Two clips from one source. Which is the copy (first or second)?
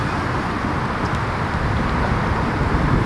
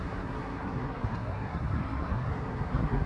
second